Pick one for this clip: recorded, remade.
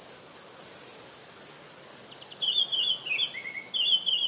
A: recorded